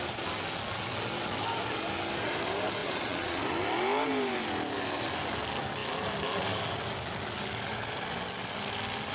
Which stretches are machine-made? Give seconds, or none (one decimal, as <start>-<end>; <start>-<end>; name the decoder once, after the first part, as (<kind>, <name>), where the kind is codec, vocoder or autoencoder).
2.8-3.4 (vocoder, Vocos)